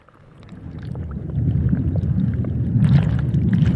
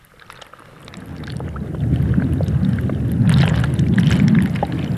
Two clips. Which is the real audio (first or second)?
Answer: second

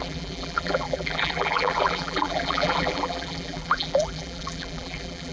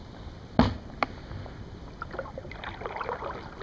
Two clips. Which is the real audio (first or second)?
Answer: second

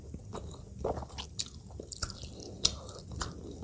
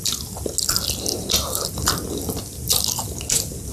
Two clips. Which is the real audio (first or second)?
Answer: second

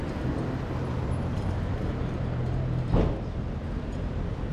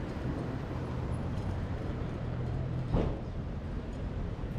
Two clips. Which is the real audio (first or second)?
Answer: first